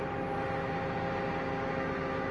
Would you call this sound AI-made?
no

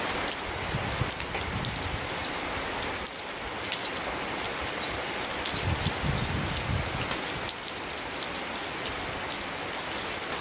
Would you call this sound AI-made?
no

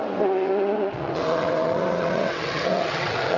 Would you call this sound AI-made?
yes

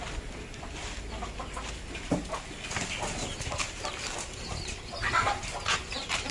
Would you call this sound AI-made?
no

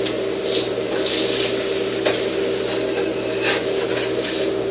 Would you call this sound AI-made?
no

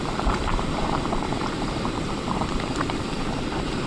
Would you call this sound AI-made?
yes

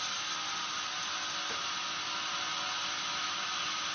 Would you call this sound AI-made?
no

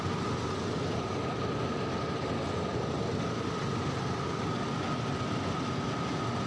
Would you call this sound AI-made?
no